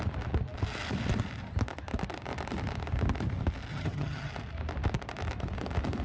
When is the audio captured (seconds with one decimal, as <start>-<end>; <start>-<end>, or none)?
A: 0.0-3.7; 4.3-6.0